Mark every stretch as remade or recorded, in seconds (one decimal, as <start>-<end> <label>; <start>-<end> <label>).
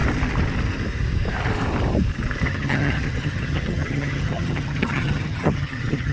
0.0-2.5 recorded; 2.5-6.1 remade